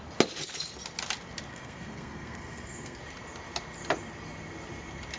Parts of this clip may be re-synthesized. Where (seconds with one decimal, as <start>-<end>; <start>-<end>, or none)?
1.5-3.0